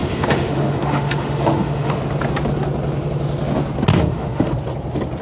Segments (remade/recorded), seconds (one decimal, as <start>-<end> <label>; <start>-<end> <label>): 0.0-2.0 remade; 2.0-3.9 recorded; 3.9-4.5 remade; 4.5-5.2 recorded